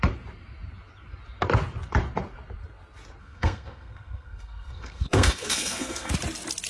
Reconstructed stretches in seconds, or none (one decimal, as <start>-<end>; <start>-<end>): 3.2-6.1